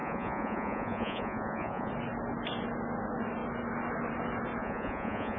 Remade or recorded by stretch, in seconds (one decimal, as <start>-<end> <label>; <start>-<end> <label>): 0.0-1.9 remade; 1.9-4.6 recorded; 4.6-5.4 remade